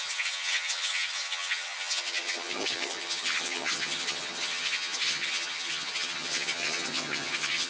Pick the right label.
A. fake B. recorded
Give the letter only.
A